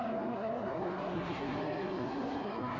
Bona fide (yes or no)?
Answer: no